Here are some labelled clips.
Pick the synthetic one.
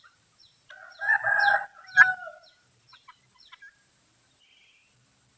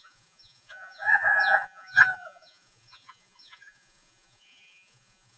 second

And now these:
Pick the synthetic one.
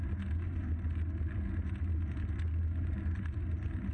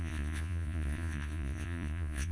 second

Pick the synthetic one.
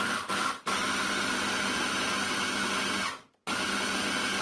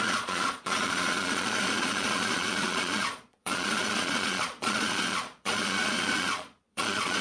second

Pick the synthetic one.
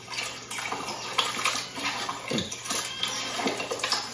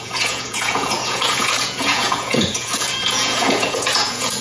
second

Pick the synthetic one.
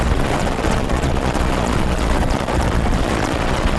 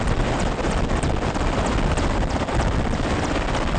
first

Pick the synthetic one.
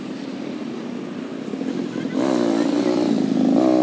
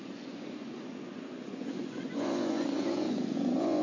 second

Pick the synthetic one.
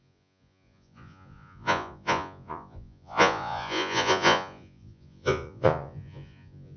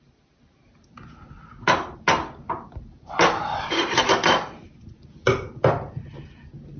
first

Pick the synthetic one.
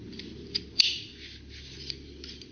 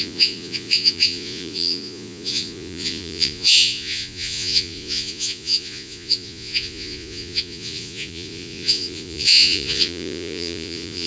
second